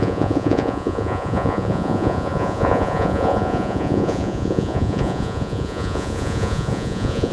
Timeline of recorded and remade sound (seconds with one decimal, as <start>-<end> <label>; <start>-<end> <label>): 0.0-7.3 remade